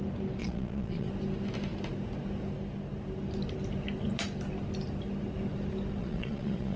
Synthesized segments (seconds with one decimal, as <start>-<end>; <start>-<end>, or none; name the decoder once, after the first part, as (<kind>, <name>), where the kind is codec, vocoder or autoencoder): 0.4-1.1 (vocoder, Vocos); 6.0-6.8